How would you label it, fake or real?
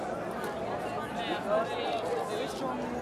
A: real